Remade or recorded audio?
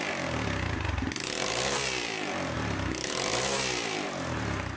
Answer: recorded